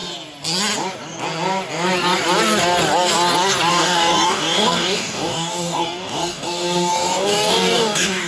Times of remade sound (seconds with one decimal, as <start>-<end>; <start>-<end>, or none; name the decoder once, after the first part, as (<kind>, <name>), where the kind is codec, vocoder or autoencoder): 3.7-8.3 (codec, DAC)